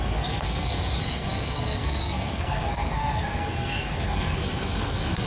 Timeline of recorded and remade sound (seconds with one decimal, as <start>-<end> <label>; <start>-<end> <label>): 0.0-5.3 remade